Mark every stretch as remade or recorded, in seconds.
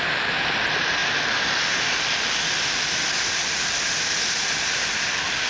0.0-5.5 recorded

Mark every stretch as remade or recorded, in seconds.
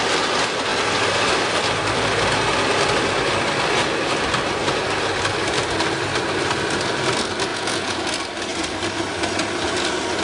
0.0-7.5 recorded; 7.5-8.0 remade; 8.0-10.2 recorded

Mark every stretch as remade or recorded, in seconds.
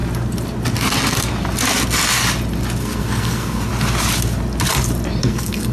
0.0-2.8 recorded; 2.8-3.7 remade; 3.7-5.2 recorded; 5.2-5.7 remade